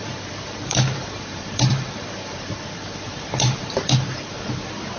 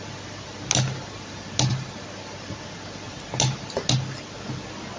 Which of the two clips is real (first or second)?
second